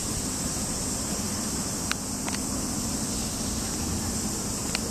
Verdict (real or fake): real